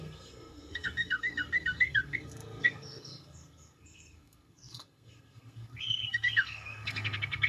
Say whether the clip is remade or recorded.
remade